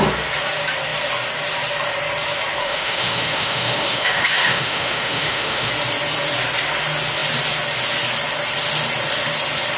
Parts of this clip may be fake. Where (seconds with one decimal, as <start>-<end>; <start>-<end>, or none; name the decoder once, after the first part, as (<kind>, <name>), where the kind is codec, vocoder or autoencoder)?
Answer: 2.6-5.7 (autoencoder, DAC-VAE)